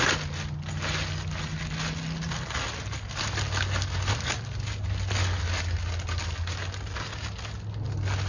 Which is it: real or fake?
real